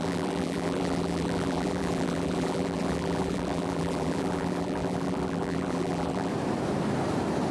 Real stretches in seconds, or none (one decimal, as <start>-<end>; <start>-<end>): 6.3-7.5